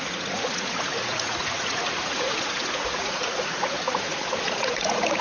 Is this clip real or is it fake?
fake